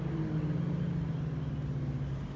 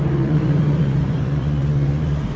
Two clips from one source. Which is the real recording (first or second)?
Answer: first